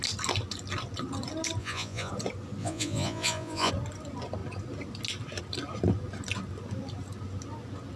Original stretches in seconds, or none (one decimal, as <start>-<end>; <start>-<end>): 0.0-1.6; 2.1-2.6; 3.7-8.0